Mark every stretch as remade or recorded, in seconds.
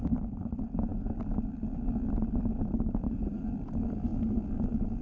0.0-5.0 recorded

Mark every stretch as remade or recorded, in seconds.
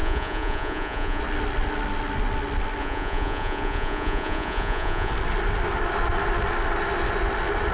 0.0-1.2 remade; 1.2-2.8 recorded; 2.8-5.1 remade; 5.1-7.7 recorded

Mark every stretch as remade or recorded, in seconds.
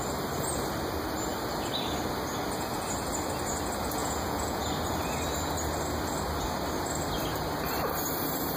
0.0-4.0 recorded; 4.0-4.7 remade; 4.7-8.6 recorded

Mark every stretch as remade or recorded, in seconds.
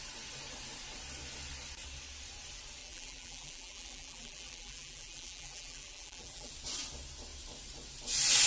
0.0-2.8 recorded; 2.8-6.5 remade; 6.5-8.5 recorded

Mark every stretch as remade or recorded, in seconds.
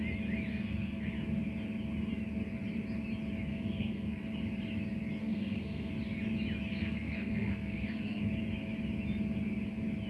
0.0-0.5 recorded; 0.5-1.1 remade; 1.1-3.5 recorded; 3.5-4.2 remade; 4.2-5.2 recorded; 5.2-5.9 remade; 5.9-6.7 recorded; 6.7-8.2 remade; 8.2-10.1 recorded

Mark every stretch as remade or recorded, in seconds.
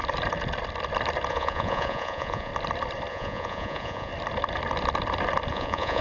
0.0-1.3 recorded; 1.3-2.5 remade; 2.5-3.1 recorded; 3.1-4.1 remade; 4.1-5.5 recorded; 5.5-6.0 remade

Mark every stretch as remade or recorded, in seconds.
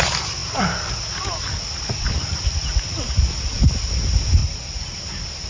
0.0-5.5 recorded